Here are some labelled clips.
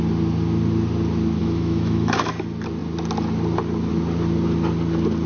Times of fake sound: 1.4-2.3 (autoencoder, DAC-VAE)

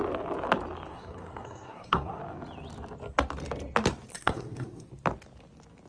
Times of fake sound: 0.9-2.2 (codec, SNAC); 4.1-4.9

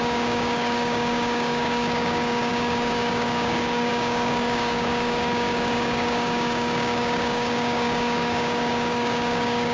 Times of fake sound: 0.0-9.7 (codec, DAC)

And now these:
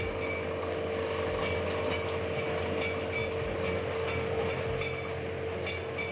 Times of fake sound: none